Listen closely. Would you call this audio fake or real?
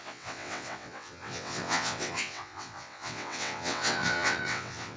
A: fake